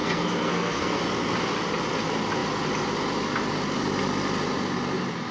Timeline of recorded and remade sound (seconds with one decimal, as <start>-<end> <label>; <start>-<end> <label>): 0.0-1.0 remade; 1.0-5.3 recorded